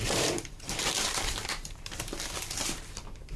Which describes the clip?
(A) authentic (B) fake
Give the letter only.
B